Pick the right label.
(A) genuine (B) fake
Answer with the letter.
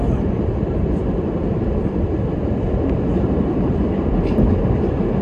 B